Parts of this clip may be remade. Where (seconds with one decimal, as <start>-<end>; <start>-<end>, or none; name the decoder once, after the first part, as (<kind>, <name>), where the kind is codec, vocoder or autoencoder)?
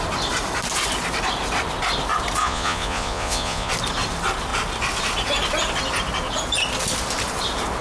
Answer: 2.4-3.7 (vocoder, Vocos)